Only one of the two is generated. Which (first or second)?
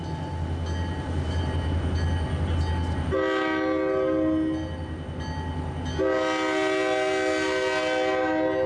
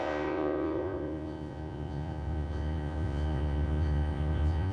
second